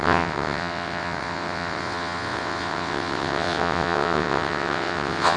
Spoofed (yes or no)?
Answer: yes